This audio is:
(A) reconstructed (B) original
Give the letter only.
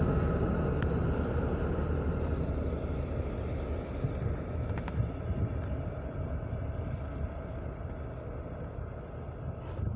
B